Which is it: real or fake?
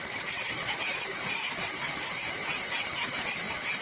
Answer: fake